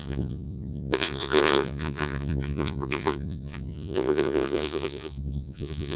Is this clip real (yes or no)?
no